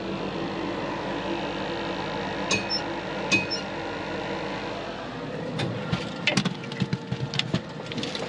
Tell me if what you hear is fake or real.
real